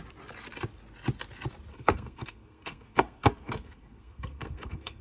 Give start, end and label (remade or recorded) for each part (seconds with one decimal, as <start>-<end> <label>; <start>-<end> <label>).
0.0-1.7 recorded; 1.7-5.0 remade